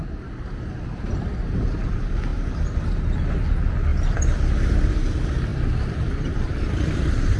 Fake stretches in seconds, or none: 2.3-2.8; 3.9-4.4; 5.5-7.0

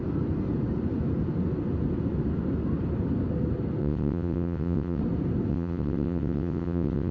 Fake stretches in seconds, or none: 3.8-5.0; 5.5-7.1

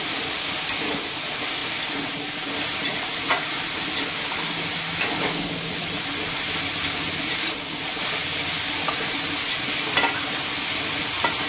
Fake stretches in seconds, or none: none

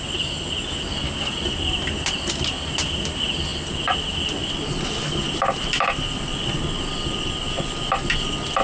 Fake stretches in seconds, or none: none

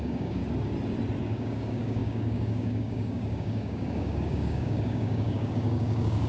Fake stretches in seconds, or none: 0.0-0.4; 1.2-6.3